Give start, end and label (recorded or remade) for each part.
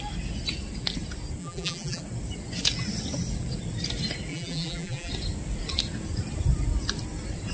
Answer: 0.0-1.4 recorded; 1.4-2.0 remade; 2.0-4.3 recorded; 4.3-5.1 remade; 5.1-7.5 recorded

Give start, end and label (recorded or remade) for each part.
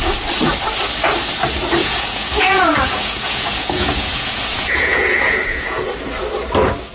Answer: 0.0-1.8 recorded; 1.8-5.9 remade; 5.9-6.9 recorded